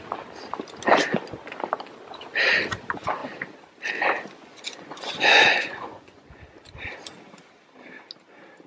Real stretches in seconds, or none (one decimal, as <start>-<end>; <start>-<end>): 0.0-4.4; 6.4-8.7